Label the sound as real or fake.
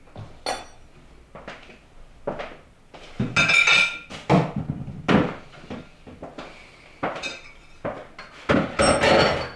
real